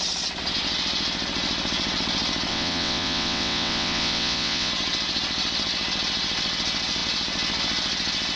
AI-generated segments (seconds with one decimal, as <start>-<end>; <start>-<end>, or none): 2.5-4.7